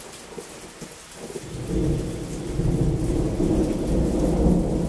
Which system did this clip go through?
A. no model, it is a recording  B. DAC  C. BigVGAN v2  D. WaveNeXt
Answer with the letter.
A